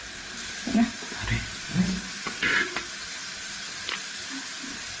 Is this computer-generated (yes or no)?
no